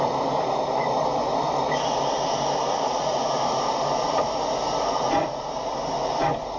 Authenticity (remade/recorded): remade